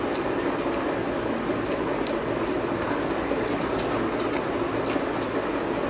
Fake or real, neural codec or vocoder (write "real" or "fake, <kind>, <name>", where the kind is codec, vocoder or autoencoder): real